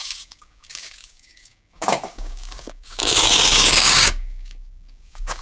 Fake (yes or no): yes